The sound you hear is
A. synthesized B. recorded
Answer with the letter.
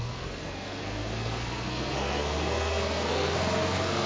A